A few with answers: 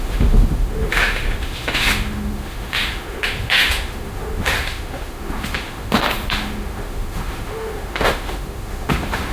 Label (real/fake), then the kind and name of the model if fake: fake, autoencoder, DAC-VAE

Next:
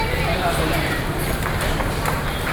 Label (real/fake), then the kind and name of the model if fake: real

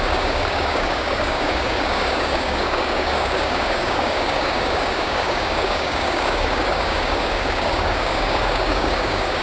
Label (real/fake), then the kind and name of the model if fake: fake, codec, DAC